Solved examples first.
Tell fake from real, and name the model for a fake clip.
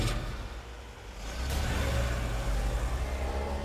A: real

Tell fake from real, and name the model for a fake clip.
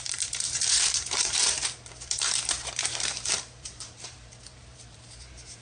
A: fake, vocoder, BigVGAN v2